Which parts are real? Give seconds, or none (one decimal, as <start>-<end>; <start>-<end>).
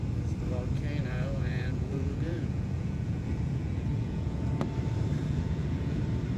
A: 0.0-1.0; 4.5-5.2; 6.0-6.4